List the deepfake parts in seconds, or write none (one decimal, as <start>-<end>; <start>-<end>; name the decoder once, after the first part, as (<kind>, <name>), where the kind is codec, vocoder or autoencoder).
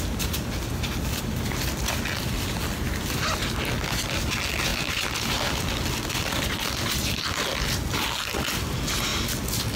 1.8-2.4 (vocoder, BigVGAN v2); 4.7-7.7